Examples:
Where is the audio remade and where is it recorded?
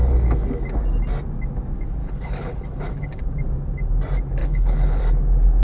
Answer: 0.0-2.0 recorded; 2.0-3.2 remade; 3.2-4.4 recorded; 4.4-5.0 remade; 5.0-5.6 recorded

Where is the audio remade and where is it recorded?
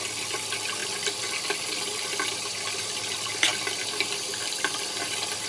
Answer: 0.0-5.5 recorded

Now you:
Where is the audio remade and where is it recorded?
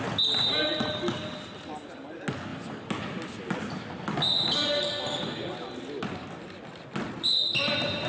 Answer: 0.0-8.1 recorded